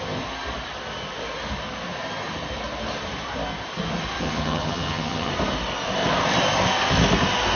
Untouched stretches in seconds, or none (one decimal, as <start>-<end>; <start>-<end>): 0.0-4.2; 5.3-7.5

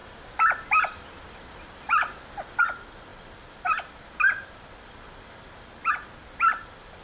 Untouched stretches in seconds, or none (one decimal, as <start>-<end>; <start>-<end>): 0.0-7.0

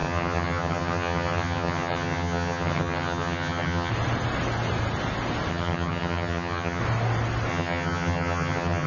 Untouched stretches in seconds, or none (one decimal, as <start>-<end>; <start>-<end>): 3.9-5.5; 6.8-7.5

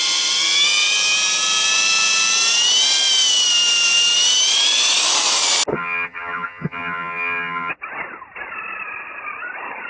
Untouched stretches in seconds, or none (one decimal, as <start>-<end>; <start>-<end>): 0.0-5.7; 7.7-9.9

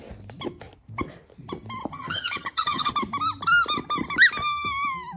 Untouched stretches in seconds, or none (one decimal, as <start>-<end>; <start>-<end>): 0.0-1.9; 2.9-5.2

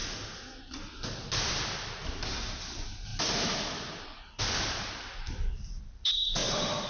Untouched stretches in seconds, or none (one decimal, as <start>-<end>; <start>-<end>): 0.0-6.9